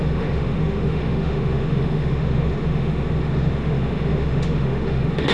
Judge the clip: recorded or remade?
remade